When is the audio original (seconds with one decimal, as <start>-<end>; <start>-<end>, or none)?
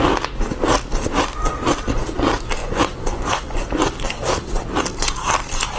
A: 0.0-2.6; 3.6-5.8